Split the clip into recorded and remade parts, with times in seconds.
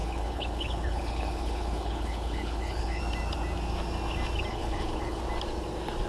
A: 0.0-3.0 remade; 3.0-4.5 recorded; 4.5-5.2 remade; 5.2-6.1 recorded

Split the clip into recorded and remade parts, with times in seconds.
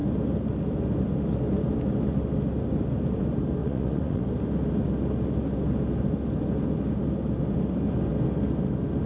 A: 0.0-3.6 recorded; 3.6-4.2 remade; 4.2-9.1 recorded